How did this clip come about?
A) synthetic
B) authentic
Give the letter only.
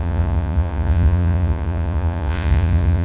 A